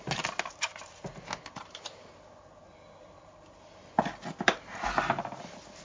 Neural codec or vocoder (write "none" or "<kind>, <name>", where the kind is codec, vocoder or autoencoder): none